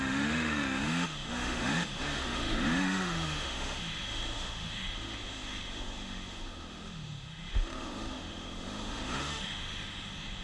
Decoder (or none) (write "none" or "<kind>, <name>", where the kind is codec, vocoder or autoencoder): autoencoder, DAC-VAE